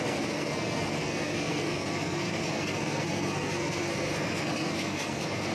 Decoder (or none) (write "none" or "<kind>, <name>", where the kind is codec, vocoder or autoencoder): codec, SNAC